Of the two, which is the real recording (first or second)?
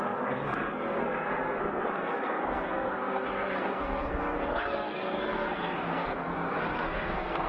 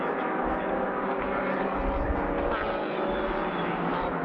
second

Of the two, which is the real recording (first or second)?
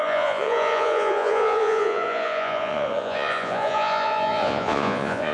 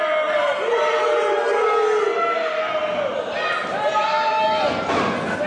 second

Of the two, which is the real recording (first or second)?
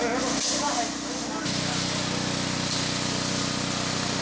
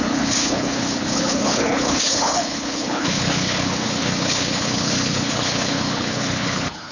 first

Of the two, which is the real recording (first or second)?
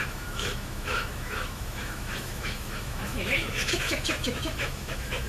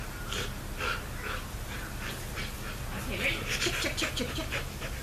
second